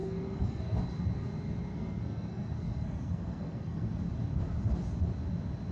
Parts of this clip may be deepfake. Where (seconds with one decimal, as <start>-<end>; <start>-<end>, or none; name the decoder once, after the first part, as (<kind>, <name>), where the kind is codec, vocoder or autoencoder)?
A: 0.0-0.8 (codec, SNAC); 1.7-3.9